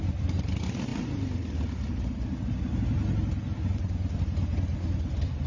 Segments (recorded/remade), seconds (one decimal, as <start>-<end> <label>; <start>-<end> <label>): 0.0-5.5 recorded